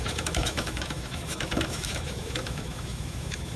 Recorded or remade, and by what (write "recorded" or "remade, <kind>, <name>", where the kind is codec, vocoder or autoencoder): remade, autoencoder, DAC-VAE